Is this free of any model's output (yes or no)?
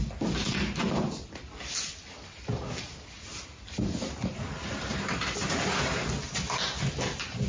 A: yes